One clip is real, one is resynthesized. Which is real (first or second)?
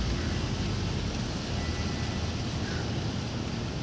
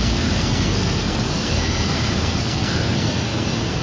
first